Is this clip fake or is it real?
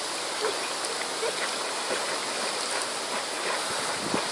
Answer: real